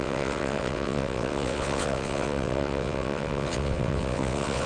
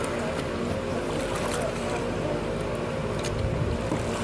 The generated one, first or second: first